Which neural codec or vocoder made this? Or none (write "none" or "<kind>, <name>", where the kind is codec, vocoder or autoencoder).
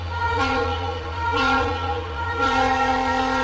vocoder, Vocos